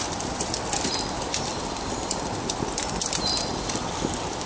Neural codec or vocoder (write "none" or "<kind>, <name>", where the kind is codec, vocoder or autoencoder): none